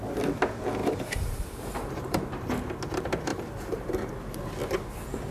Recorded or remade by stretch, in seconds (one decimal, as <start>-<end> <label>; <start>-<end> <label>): 0.0-0.8 recorded; 0.8-2.3 remade; 2.3-3.3 recorded; 3.3-4.1 remade; 4.1-5.3 recorded